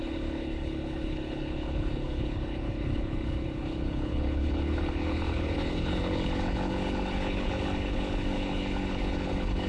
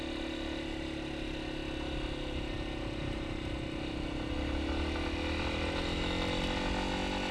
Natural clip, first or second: second